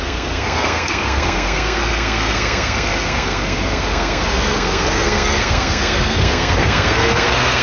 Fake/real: fake